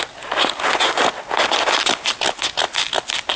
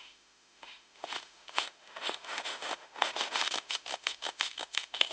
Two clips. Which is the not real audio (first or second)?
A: second